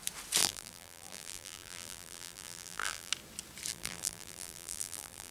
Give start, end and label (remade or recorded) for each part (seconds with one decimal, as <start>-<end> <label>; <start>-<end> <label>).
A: 0.0-0.4 recorded; 0.4-3.1 remade; 3.1-3.7 recorded; 3.7-5.3 remade